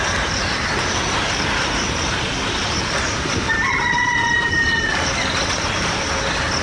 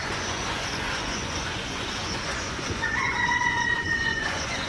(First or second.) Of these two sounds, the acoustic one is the first